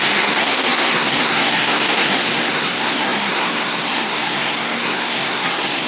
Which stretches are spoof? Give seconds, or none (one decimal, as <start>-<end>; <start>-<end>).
0.0-5.9

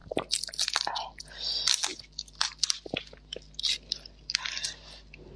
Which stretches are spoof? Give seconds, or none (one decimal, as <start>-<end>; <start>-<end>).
none

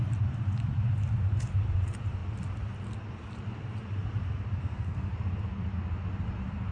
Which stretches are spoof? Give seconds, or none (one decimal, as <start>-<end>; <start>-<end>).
4.6-5.1

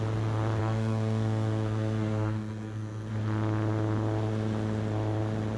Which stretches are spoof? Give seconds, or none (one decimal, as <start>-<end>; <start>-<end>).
0.6-3.1

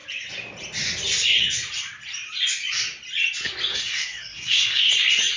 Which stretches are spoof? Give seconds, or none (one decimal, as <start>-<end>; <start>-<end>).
3.7-4.9

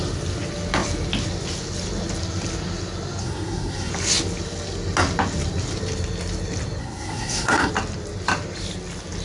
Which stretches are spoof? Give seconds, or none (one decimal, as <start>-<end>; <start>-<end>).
3.2-3.9; 6.8-7.7

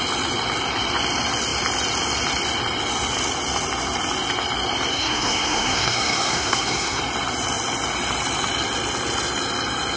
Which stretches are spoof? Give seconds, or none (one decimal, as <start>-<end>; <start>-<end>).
4.9-7.0

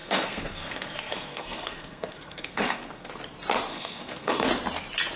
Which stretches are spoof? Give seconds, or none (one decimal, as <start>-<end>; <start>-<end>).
0.0-3.1; 3.7-4.5